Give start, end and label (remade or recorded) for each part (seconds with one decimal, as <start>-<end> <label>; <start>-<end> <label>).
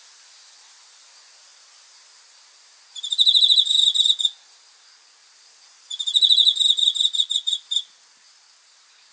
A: 0.0-9.1 recorded